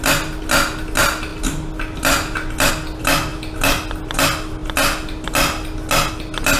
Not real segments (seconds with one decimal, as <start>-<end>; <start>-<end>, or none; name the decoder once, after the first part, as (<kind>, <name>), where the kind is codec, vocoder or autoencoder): none